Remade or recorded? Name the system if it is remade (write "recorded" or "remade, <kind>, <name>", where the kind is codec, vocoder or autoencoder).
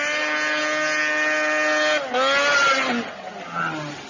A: recorded